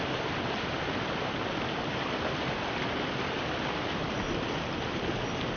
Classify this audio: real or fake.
real